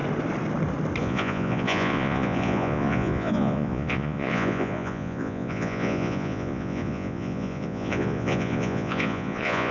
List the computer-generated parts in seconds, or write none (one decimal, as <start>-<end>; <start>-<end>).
1.0-9.7